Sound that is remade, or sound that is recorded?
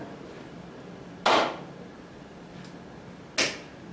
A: recorded